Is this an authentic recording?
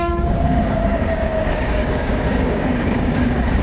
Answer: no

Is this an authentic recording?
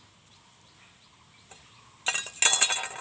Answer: yes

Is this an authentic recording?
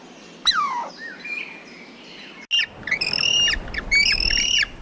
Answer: yes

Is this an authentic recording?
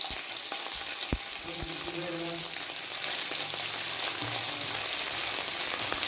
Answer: yes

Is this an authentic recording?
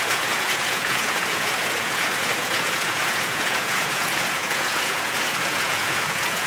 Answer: no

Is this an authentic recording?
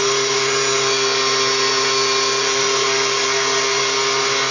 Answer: yes